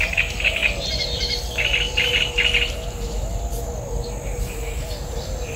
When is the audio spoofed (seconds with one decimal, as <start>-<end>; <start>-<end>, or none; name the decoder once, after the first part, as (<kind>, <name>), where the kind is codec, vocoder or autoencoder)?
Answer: none

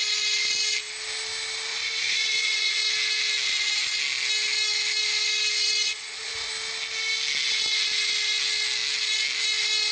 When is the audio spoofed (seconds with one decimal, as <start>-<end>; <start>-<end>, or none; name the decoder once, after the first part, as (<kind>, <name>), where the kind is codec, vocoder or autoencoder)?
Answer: 1.7-2.8 (vocoder, Vocos); 5.8-6.5

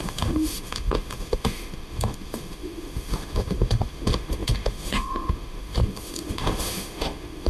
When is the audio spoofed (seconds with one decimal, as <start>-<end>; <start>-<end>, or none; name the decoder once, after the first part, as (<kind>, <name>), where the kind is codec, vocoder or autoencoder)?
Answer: 0.0-7.5 (autoencoder, DAC-VAE)

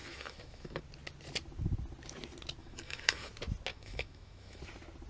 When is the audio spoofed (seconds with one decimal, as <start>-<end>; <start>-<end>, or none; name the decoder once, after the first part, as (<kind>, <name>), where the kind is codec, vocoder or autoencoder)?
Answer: 0.0-0.8 (autoencoder, DAC-VAE); 2.6-3.3; 3.7-4.6

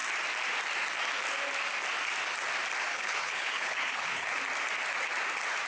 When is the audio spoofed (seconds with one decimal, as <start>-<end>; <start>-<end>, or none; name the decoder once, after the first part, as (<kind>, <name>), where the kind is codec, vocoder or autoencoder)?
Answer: 2.9-4.4 (codec, HILCodec)

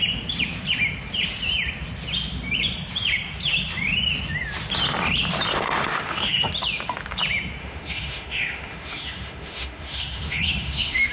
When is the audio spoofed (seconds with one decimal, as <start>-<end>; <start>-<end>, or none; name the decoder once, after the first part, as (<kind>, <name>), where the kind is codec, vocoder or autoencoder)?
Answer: 5.5-6.5 (autoencoder, DAC-VAE); 7.6-11.1

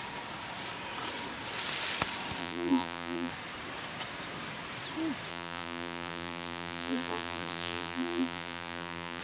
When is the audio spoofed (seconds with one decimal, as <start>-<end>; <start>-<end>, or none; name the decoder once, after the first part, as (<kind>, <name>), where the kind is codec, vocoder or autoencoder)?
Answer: 2.4-3.3 (vocoder, BigVGAN v2); 5.3-9.2

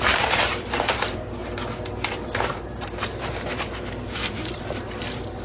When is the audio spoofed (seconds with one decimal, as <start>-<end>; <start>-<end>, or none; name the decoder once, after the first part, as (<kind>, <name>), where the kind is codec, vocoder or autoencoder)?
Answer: 0.0-1.4 (vocoder, BigVGAN v2); 2.1-5.4